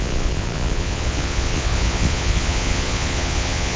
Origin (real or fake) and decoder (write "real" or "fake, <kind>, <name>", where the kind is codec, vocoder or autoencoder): fake, vocoder, Vocos